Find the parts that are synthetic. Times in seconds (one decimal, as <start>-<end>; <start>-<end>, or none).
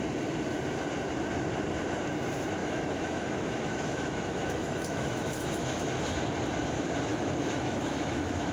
2.6-5.9; 7.1-8.5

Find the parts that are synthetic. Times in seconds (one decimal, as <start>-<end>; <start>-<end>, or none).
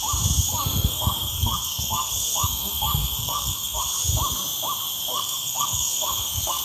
0.5-3.8; 5.1-6.6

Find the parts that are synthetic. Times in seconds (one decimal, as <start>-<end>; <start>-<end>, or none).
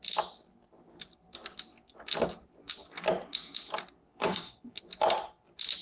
4.1-4.8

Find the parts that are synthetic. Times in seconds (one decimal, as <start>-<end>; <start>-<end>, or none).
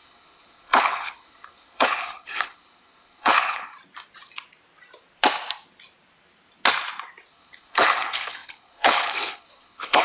0.0-3.7; 7.3-10.0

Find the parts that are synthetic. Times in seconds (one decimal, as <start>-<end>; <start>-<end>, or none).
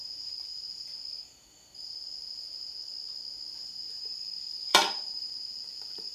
0.0-0.9; 3.5-6.1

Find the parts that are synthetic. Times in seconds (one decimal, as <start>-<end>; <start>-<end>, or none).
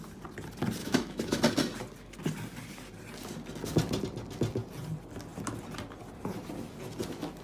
0.8-1.4